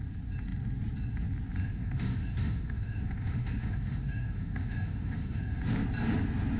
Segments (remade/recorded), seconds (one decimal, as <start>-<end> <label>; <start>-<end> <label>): 0.0-1.6 recorded; 1.6-5.6 remade; 5.6-6.6 recorded

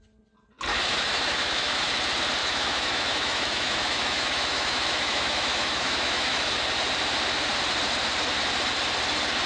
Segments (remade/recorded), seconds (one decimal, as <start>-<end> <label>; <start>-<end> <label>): 0.0-0.7 recorded; 0.7-1.9 remade; 1.9-2.4 recorded; 2.4-6.5 remade; 6.5-9.5 recorded